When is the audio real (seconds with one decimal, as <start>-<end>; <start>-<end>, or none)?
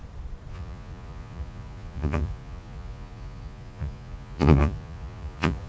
0.0-0.5